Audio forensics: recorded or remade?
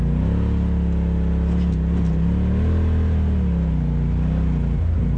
recorded